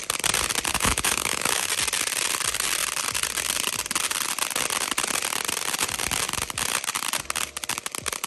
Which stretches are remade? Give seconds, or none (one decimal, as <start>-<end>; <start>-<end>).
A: 0.7-1.7